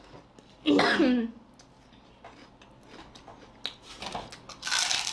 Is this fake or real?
real